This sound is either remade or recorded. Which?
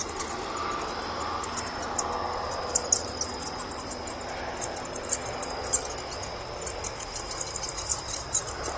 recorded